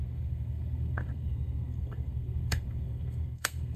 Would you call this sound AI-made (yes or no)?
yes